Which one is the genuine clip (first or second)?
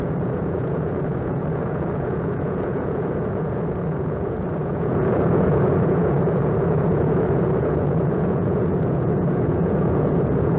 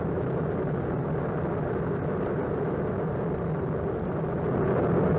second